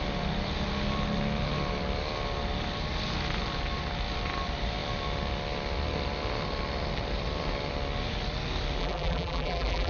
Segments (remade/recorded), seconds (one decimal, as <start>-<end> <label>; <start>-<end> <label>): 0.0-8.8 recorded; 8.8-9.9 remade